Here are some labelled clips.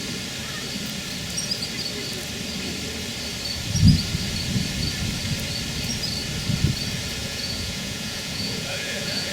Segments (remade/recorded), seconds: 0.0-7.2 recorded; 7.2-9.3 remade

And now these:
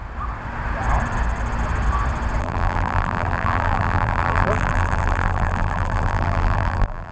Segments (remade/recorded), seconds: 0.0-2.4 recorded; 2.4-7.1 remade